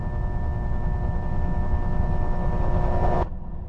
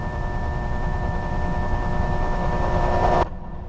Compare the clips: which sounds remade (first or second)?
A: second